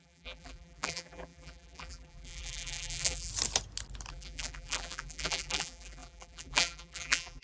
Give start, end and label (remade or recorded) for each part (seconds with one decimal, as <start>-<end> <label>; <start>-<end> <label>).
0.0-3.3 remade; 3.3-4.1 recorded; 4.1-7.4 remade